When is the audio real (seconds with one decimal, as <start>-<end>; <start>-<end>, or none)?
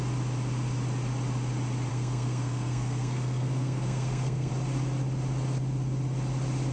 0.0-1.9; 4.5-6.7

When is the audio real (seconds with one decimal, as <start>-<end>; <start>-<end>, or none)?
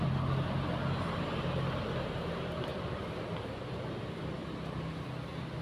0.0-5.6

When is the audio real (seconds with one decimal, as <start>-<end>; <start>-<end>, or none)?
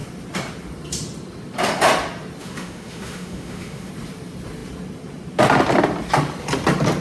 0.0-2.4; 3.9-7.0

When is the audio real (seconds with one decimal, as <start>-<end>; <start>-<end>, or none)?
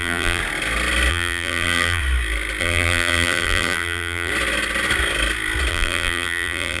0.4-1.1; 2.0-2.6; 4.3-5.7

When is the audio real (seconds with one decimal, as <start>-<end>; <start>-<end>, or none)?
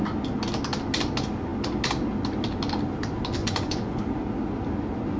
0.0-3.4; 4.0-5.2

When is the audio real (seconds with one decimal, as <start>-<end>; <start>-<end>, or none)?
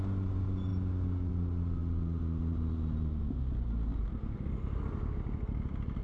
0.0-6.0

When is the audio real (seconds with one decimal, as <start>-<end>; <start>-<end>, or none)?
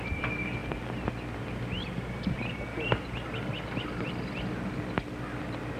0.0-5.8